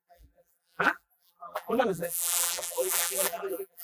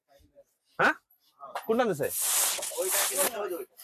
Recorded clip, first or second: second